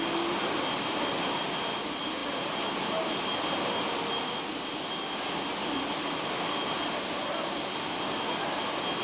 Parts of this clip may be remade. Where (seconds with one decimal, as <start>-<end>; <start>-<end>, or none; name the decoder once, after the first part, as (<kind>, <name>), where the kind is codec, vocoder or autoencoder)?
none